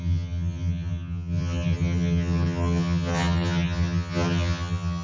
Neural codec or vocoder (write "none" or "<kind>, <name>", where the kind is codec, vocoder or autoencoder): vocoder, HiFi-GAN